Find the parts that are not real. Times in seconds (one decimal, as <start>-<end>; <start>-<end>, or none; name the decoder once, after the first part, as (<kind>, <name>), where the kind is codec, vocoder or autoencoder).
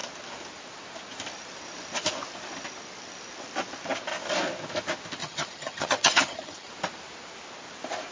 5.2-6.7 (vocoder, HiFi-GAN)